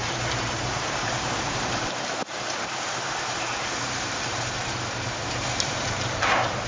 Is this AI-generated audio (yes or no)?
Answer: yes